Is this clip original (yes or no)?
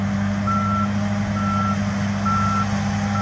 yes